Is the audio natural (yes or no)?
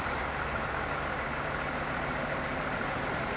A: yes